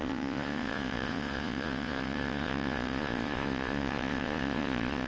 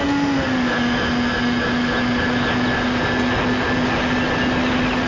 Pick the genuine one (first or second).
second